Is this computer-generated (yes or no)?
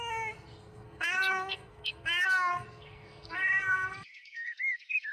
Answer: yes